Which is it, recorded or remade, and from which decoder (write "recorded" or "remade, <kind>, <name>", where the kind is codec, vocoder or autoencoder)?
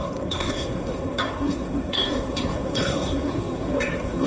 remade, codec, SNAC